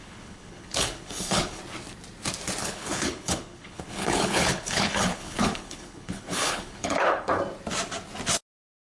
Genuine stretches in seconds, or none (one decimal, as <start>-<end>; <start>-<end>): 1.6-2.6; 7.4-8.8